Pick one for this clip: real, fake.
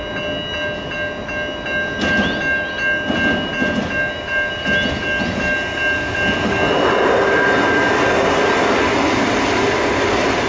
real